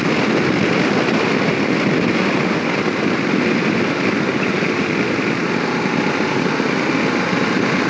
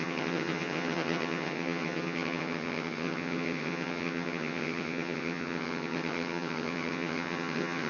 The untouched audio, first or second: first